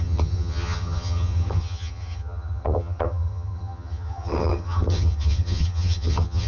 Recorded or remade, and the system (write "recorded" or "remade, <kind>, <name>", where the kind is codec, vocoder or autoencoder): remade, vocoder, HiFi-GAN